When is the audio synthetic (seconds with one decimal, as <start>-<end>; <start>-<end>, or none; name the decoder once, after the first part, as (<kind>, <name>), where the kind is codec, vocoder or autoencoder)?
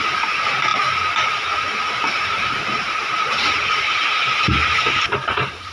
0.0-0.7 (vocoder, BigVGAN v2); 2.2-5.7